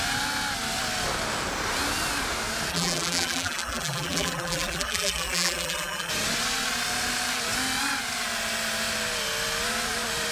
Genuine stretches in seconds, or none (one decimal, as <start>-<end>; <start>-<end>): 0.0-2.7; 6.1-10.3